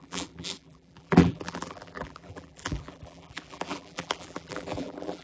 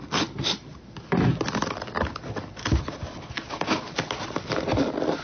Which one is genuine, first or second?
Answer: second